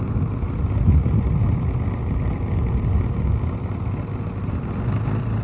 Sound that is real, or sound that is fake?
real